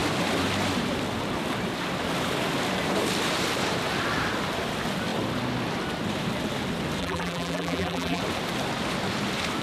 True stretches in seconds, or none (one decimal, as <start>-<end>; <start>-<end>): 0.0-7.0; 8.2-9.6